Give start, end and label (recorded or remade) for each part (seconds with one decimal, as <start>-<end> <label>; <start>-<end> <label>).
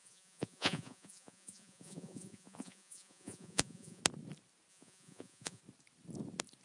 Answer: 0.0-4.0 remade; 4.0-4.7 recorded; 4.7-5.6 remade; 5.6-6.6 recorded